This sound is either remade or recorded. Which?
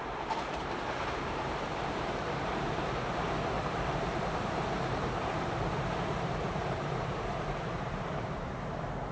remade